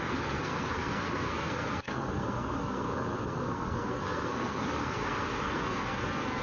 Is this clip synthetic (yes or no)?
yes